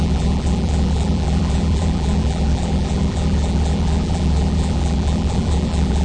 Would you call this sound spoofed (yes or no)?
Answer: yes